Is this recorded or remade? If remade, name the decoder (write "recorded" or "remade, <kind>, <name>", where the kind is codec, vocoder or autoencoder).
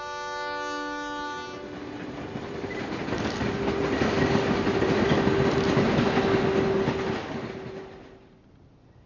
recorded